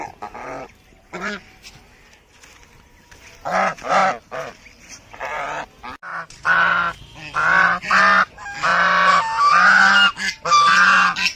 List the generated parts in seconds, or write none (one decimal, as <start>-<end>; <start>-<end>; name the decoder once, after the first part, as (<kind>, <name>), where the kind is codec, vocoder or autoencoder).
none